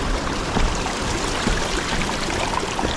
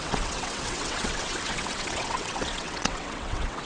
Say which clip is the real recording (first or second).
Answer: first